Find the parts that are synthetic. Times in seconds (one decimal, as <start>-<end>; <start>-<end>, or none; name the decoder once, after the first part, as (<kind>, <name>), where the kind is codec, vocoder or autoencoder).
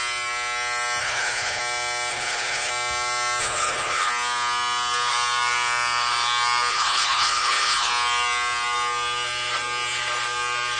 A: 1.0-1.6 (codec, HILCodec); 2.1-2.7; 3.4-4.1; 6.7-7.9